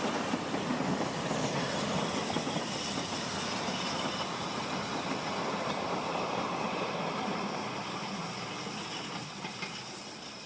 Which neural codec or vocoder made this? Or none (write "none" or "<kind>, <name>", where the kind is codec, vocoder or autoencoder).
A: none